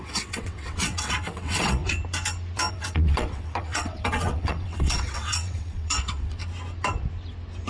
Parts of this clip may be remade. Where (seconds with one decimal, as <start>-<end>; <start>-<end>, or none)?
0.0-1.8; 2.7-6.4